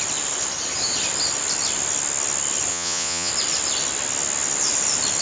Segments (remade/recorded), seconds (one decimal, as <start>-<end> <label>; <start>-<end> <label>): 0.0-2.7 recorded; 2.7-3.3 remade; 3.3-5.2 recorded